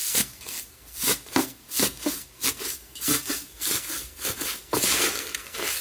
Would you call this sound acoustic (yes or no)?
no